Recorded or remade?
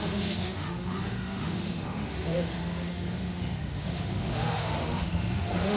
remade